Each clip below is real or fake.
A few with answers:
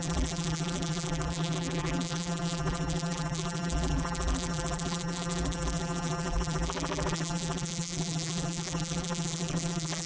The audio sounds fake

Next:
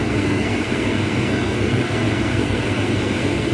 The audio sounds fake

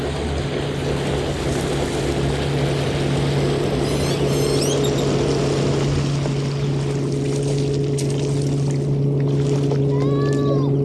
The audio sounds real